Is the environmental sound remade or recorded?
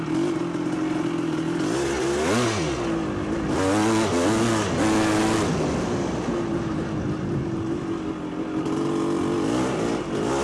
recorded